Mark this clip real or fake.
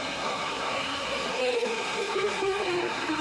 fake